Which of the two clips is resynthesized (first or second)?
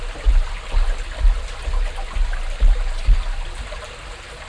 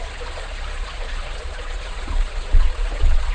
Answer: second